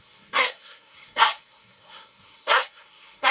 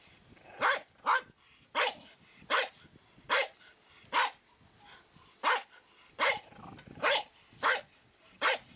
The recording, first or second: second